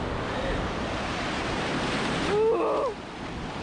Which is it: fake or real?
real